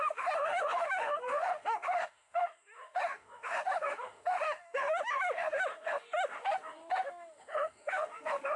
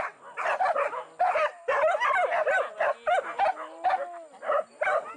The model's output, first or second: first